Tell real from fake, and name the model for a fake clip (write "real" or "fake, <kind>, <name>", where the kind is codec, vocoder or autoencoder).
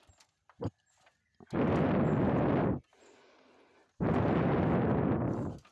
real